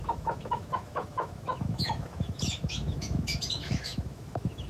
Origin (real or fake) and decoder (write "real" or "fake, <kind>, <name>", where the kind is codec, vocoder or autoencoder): fake, autoencoder, DAC-VAE